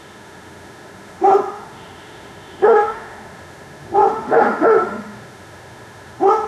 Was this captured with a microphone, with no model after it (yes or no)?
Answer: no